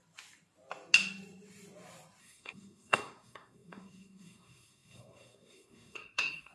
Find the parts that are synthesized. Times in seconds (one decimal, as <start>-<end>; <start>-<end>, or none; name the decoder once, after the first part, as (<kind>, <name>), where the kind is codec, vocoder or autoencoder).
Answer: 2.2-6.5 (codec, SNAC)

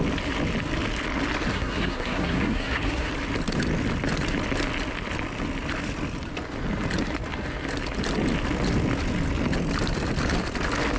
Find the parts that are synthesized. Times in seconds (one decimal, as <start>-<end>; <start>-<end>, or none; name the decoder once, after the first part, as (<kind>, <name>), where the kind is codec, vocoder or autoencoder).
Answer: 1.5-3.1 (codec, SNAC)

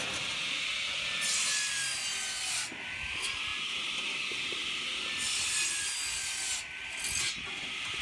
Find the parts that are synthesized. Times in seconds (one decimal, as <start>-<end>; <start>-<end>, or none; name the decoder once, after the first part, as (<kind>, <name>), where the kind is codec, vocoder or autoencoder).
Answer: none

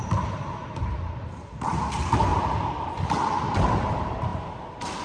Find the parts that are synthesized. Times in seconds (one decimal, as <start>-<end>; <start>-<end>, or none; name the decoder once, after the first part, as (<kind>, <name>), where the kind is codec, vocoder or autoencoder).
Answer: none

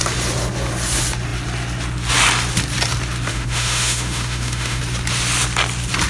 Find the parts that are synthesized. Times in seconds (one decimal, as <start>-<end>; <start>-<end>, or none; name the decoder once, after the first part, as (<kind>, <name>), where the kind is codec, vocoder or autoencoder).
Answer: 3.3-4.8 (autoencoder, DAC-VAE)